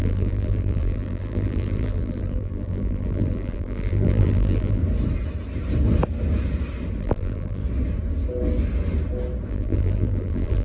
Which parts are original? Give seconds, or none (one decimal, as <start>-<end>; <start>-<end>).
4.8-7.0; 7.6-9.5